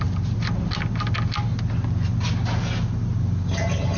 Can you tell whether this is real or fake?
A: real